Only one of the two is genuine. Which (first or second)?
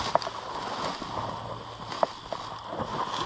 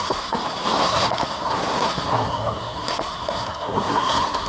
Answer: first